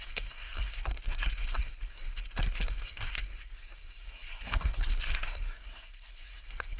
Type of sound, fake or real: fake